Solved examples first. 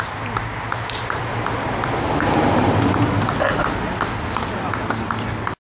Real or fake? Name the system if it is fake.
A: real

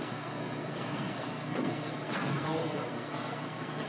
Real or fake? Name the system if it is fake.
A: fake, codec, SNAC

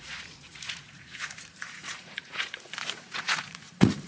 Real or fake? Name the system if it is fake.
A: fake, vocoder, Vocos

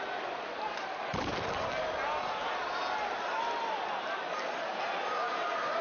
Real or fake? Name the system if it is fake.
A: real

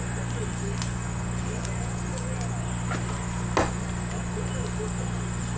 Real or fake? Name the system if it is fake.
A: real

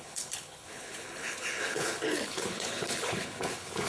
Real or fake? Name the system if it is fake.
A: fake, codec, HILCodec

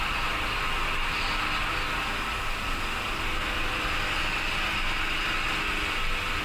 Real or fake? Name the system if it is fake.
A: real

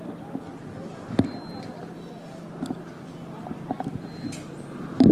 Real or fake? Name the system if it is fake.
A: real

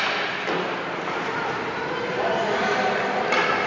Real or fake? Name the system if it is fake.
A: real